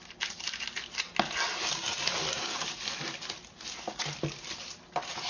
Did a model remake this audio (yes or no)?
no